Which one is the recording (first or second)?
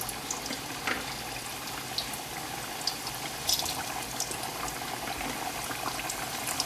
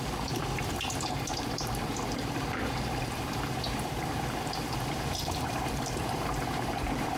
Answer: first